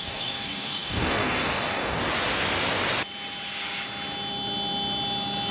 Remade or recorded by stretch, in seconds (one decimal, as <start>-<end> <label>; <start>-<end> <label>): 0.0-2.0 remade; 2.0-5.5 recorded

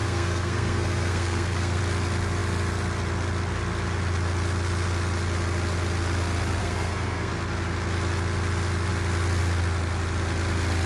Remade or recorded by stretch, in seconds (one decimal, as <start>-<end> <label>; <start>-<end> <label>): 0.0-1.8 remade; 1.8-6.6 recorded; 6.6-7.3 remade; 7.3-10.9 recorded

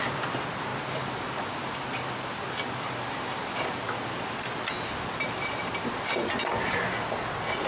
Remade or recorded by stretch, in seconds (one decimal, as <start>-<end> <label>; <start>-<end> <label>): 0.0-7.7 recorded

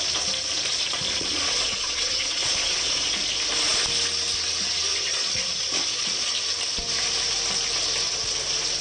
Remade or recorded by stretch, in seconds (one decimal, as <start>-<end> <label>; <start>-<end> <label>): 0.0-0.7 recorded; 0.7-3.2 remade; 3.2-4.9 recorded; 4.9-6.3 remade; 6.3-8.8 recorded

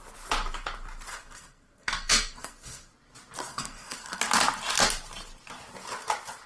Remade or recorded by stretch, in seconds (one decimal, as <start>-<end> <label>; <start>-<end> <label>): 0.0-1.1 recorded; 1.1-2.9 remade; 2.9-3.5 recorded; 3.5-4.2 remade; 4.2-6.5 recorded

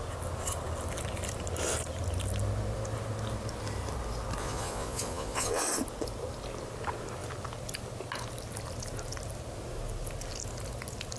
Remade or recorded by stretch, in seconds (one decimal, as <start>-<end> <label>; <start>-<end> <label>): 0.0-4.4 recorded; 4.4-5.6 remade; 5.6-11.2 recorded